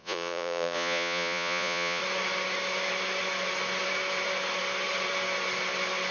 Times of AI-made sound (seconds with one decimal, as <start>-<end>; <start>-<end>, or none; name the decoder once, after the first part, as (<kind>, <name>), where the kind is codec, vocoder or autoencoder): 0.0-2.0 (vocoder, Vocos)